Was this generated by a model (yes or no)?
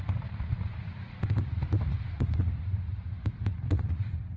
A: yes